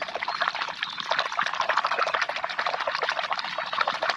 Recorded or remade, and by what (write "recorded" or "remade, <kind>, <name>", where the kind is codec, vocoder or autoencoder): recorded